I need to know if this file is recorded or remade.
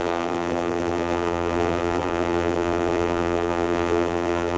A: remade